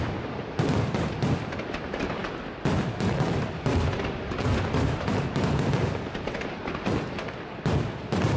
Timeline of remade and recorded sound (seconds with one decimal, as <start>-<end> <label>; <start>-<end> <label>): 0.0-8.4 recorded